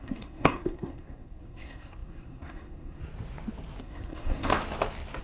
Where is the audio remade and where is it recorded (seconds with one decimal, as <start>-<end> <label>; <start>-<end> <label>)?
0.0-3.0 remade; 3.0-3.8 recorded; 3.8-4.5 remade; 4.5-5.2 recorded